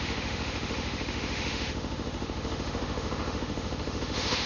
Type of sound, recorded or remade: remade